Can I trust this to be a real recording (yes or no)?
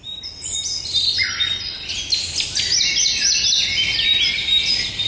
yes